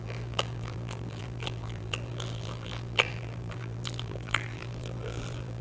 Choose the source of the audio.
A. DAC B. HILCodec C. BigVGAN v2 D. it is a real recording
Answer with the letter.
C